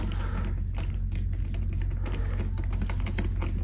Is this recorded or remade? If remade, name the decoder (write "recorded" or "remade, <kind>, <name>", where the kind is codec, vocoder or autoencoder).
recorded